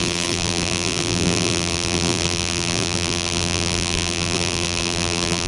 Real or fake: fake